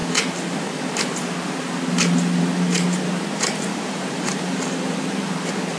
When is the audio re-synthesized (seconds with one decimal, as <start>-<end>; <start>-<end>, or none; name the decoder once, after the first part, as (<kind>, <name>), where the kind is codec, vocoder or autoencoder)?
3.7-5.1 (vocoder, BigVGAN v2)